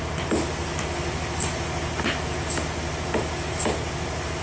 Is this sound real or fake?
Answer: real